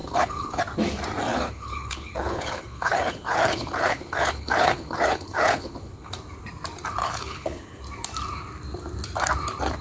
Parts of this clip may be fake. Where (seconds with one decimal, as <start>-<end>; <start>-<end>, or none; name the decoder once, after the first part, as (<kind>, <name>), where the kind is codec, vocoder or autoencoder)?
0.0-0.6 (codec, HILCodec); 1.3-6.1; 7.0-7.8